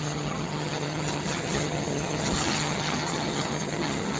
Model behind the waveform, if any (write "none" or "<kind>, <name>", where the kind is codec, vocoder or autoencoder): vocoder, HiFi-GAN